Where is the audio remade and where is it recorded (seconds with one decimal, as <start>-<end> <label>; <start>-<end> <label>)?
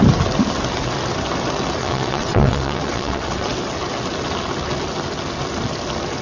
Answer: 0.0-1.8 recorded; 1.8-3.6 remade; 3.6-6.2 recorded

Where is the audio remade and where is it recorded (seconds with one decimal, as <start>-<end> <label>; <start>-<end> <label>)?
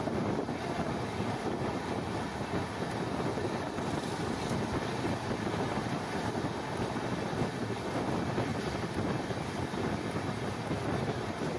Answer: 0.0-8.5 recorded; 8.5-9.8 remade; 9.8-11.6 recorded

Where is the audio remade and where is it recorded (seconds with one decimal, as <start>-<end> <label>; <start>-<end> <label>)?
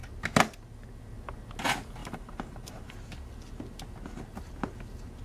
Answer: 0.0-2.0 recorded; 2.0-2.9 remade; 2.9-5.2 recorded